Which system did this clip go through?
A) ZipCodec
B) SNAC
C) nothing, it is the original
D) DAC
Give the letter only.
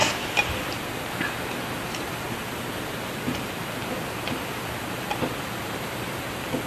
C